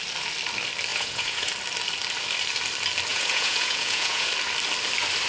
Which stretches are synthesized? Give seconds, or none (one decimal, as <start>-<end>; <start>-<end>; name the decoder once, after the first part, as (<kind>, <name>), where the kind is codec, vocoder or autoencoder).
0.9-1.5 (vocoder, Vocos); 3.1-4.3